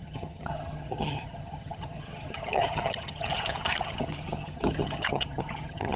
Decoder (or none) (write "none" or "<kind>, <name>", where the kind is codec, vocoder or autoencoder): vocoder, HiFi-GAN